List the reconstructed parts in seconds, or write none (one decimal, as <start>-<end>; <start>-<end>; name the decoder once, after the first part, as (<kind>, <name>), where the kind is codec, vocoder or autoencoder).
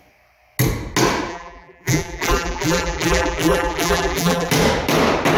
1.3-4.5 (vocoder, BigVGAN v2)